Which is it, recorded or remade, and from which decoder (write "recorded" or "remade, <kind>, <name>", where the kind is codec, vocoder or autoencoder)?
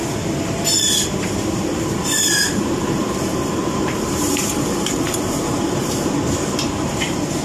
remade, vocoder, BigVGAN v2